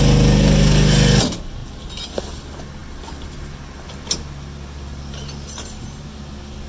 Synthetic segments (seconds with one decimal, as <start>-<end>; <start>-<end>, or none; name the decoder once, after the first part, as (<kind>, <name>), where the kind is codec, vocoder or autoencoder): none